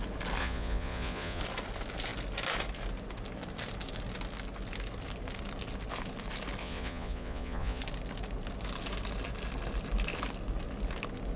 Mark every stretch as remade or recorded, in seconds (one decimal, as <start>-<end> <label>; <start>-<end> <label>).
0.0-0.4 recorded; 0.4-1.4 remade; 1.4-6.6 recorded; 6.6-7.8 remade; 7.8-11.4 recorded